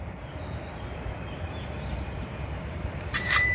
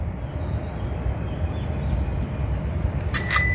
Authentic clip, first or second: second